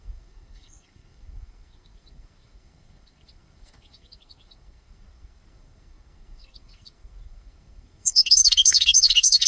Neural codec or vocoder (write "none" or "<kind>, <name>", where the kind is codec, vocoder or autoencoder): codec, SNAC